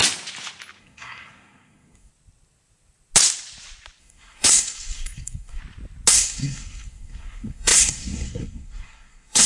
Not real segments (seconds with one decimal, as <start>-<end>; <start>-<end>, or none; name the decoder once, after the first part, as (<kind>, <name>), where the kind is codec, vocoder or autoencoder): 0.8-2.1 (codec, SNAC); 4.0-5.6; 6.1-9.5